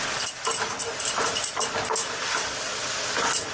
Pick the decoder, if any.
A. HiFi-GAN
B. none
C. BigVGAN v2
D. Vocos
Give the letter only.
B